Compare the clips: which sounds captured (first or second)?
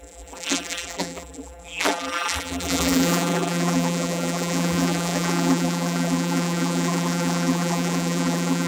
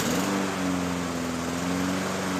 second